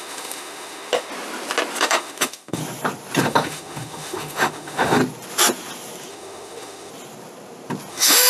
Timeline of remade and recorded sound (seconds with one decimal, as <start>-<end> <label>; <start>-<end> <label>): 0.0-1.1 remade; 1.1-1.8 recorded; 1.8-2.6 remade; 2.6-3.2 recorded; 3.2-5.0 remade; 5.0-6.1 recorded; 6.1-6.9 remade; 6.9-7.9 recorded; 7.9-8.3 remade